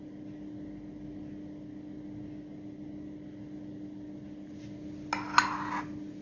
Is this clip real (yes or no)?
yes